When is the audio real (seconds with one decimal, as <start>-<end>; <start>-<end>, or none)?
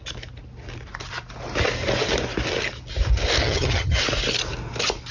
0.0-3.4; 4.0-5.1